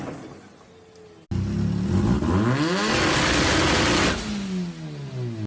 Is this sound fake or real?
real